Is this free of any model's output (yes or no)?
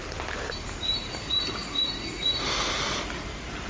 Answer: yes